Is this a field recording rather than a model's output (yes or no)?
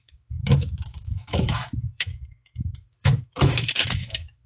no